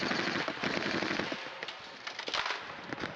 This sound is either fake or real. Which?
real